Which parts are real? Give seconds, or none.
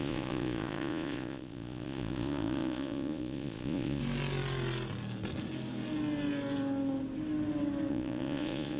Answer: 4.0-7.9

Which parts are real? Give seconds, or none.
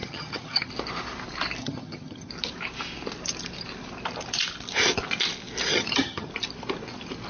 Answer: 0.7-1.6; 2.3-5.7; 6.3-7.3